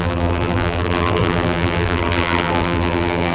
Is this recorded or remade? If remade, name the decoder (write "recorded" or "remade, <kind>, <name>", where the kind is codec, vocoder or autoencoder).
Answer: remade, vocoder, BigVGAN v2